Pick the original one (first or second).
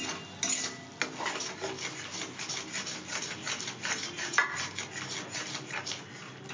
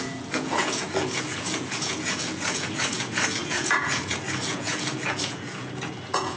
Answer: first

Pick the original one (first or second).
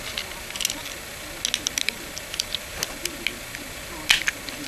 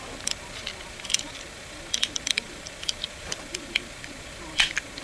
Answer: first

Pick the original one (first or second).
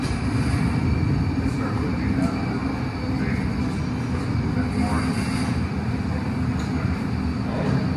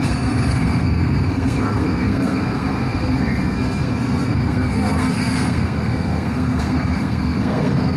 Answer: first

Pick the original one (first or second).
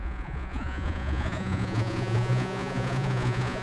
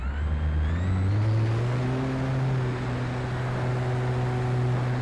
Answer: second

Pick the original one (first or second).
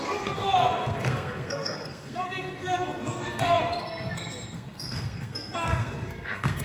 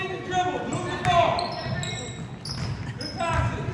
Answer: second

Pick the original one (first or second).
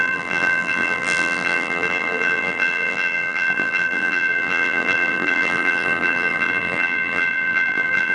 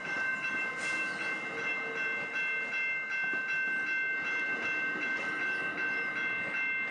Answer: second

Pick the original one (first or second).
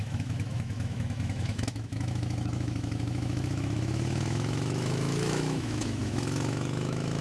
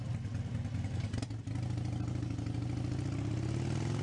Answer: second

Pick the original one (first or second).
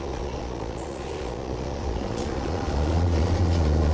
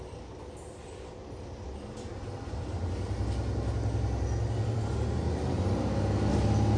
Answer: second